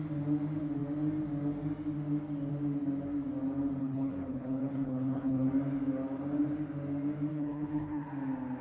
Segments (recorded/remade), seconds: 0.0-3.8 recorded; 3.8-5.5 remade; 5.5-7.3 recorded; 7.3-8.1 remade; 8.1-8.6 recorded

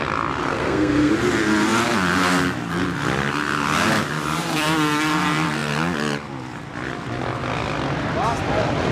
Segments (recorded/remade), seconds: 0.0-0.5 recorded; 0.5-1.1 remade; 1.1-8.9 recorded

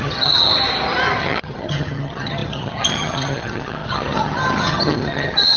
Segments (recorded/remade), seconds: 0.0-0.5 remade; 0.5-1.2 recorded; 1.2-5.6 remade

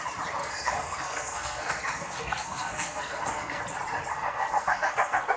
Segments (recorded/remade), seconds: 0.0-0.4 recorded; 0.4-3.6 remade; 3.6-4.1 recorded; 4.1-5.4 remade